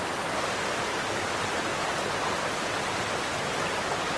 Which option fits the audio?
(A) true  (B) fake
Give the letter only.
A